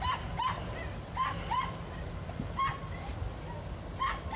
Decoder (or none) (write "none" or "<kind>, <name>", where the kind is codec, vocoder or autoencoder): none